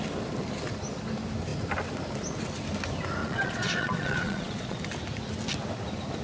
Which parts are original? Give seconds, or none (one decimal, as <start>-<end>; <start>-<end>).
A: 0.0-3.2; 4.8-6.2